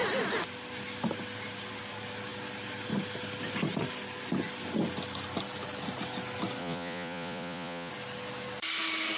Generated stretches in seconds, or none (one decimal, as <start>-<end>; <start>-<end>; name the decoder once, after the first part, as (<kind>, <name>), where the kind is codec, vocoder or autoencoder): 6.6-7.9 (vocoder, Vocos)